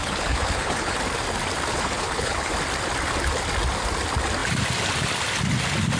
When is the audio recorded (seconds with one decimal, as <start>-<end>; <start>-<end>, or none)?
1.0-1.7; 2.5-6.0